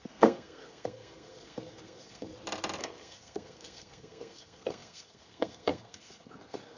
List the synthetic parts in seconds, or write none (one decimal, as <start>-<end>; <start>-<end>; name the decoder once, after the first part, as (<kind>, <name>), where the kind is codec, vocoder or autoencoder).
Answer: 0.0-2.3 (codec, SNAC); 2.8-6.8